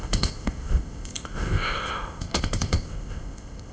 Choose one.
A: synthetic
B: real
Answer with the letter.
A